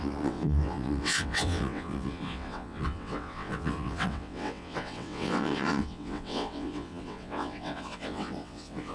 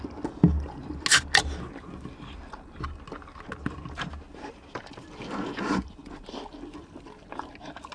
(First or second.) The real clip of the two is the second